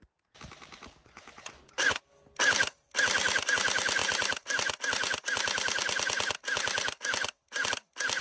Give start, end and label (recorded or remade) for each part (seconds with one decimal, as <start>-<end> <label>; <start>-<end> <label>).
0.0-1.0 recorded; 1.0-2.0 remade; 2.0-8.2 recorded